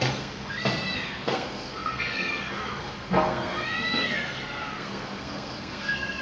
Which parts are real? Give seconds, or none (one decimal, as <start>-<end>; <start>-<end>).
none